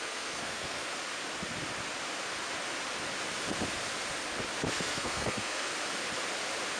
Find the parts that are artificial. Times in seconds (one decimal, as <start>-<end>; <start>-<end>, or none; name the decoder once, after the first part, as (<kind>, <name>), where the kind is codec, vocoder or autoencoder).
0.0-0.9 (codec, SNAC); 4.7-5.7